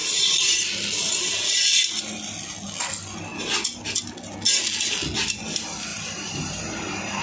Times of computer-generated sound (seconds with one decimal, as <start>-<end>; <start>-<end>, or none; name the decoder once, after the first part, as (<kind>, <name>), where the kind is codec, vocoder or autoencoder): 5.9-7.2 (vocoder, BigVGAN v2)